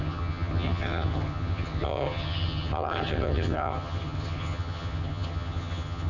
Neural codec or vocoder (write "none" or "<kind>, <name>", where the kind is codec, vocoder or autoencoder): vocoder, HiFi-GAN